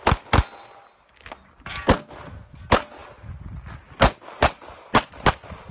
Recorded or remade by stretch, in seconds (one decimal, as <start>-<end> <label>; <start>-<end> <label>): 0.0-5.7 recorded